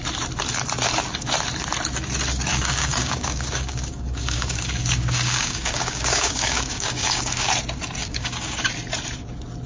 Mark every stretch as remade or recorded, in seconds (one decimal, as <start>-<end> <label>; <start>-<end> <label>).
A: 0.0-2.5 recorded; 2.5-7.5 remade; 7.5-8.0 recorded; 8.0-8.6 remade; 8.6-9.7 recorded